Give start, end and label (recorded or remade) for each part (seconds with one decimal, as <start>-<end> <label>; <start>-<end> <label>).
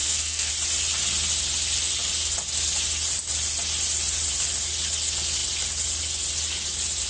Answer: 0.0-0.5 remade; 0.5-7.1 recorded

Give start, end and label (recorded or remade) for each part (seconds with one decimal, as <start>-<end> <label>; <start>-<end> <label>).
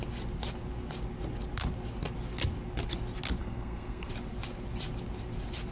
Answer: 0.0-3.4 recorded; 3.4-4.1 remade; 4.1-5.7 recorded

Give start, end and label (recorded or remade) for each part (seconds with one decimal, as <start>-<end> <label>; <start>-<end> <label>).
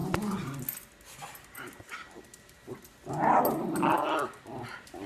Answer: 0.0-5.1 recorded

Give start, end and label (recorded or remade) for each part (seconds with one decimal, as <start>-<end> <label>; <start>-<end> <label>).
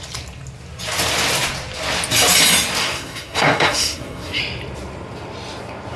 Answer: 0.0-2.8 recorded; 2.8-4.4 remade; 4.4-6.0 recorded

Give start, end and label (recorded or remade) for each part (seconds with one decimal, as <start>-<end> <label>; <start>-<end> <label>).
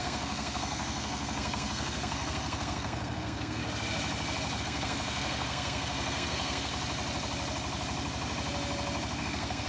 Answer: 0.0-3.6 remade; 3.6-4.6 recorded; 4.6-6.7 remade; 6.7-9.2 recorded; 9.2-9.7 remade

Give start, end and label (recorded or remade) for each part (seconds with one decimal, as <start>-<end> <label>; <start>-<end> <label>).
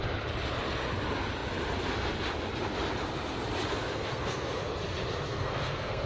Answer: 0.0-3.7 recorded; 3.7-4.6 remade; 4.6-5.3 recorded; 5.3-6.1 remade